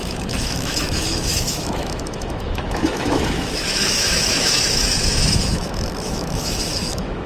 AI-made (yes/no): yes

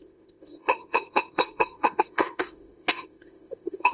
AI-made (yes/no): yes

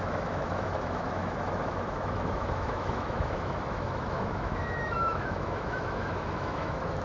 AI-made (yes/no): yes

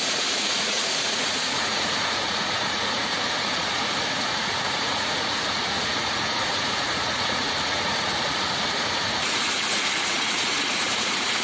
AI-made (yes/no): yes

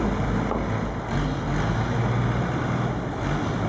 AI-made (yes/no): no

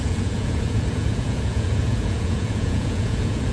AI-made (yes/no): yes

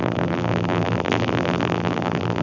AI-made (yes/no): yes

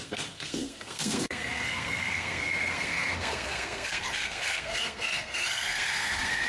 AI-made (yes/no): yes